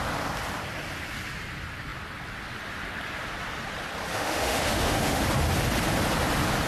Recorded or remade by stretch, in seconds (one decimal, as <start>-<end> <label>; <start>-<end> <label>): 0.0-4.1 recorded; 4.1-5.2 remade; 5.2-6.7 recorded